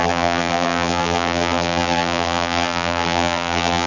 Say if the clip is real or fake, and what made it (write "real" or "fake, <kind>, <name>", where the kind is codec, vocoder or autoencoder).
fake, vocoder, BigVGAN v2